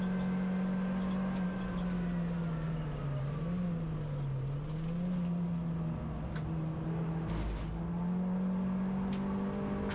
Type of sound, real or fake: real